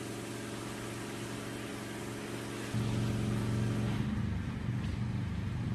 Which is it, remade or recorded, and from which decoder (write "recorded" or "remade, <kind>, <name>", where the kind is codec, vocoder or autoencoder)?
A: recorded